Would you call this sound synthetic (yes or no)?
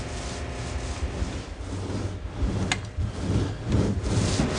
no